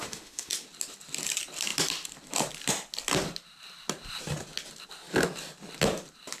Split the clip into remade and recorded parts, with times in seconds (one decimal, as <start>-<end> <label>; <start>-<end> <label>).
0.0-0.5 remade; 0.5-6.4 recorded

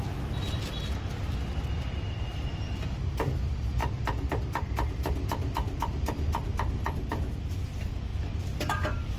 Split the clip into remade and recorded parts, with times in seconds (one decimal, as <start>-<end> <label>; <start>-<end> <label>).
0.0-9.2 recorded

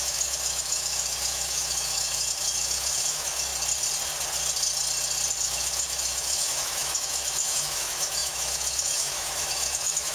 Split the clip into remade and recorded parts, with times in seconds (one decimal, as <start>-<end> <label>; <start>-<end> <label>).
0.0-3.5 remade; 3.5-5.4 recorded; 5.4-10.1 remade

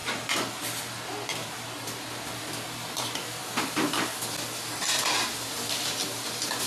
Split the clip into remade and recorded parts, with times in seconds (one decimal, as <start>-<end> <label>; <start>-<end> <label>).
0.0-6.7 recorded

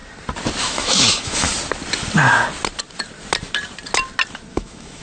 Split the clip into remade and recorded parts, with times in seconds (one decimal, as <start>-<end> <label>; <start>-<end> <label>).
0.0-0.6 recorded; 0.6-1.5 remade; 1.5-4.5 recorded; 4.5-5.0 remade

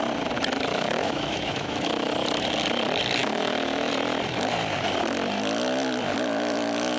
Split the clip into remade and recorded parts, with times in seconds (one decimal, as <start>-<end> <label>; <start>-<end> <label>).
0.0-0.7 recorded; 0.7-2.1 remade; 2.1-3.2 recorded; 3.2-3.9 remade; 3.9-7.0 recorded

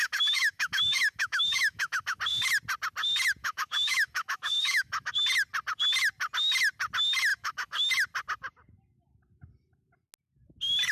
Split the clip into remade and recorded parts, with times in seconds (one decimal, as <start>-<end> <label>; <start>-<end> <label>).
0.0-2.2 remade; 2.2-3.4 recorded; 3.4-5.1 remade; 5.1-7.3 recorded; 7.3-7.9 remade; 7.9-10.9 recorded